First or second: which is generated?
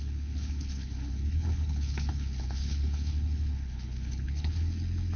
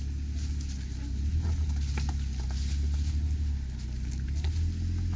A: first